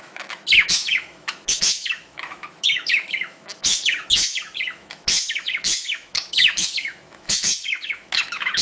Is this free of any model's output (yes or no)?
no